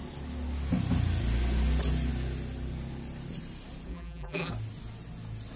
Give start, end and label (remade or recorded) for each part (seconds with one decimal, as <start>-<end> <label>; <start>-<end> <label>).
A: 0.0-3.9 recorded; 3.9-4.5 remade; 4.5-5.6 recorded